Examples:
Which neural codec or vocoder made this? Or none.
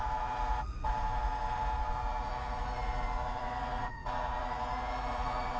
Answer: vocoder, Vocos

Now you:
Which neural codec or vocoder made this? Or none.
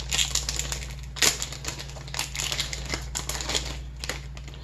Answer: none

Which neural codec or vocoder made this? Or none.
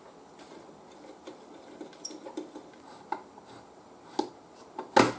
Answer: none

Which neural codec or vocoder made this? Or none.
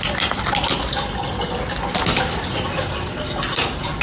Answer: none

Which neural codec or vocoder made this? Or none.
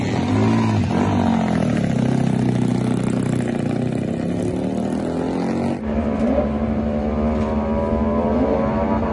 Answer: none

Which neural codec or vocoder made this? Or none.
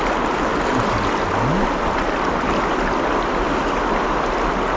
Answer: none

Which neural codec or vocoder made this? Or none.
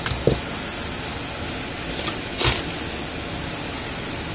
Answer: none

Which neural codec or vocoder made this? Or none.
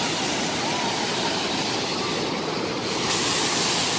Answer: none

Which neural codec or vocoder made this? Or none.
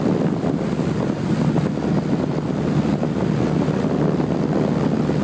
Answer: none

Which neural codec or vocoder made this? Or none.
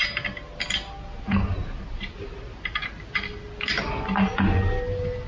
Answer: none